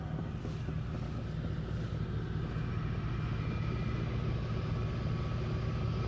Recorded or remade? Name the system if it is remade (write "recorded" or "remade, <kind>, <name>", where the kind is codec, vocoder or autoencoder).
recorded